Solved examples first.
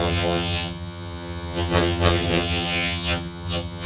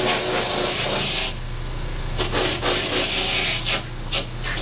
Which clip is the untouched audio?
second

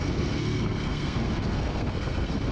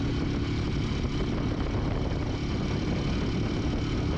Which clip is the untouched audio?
second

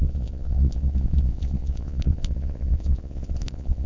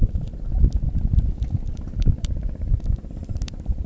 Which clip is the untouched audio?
second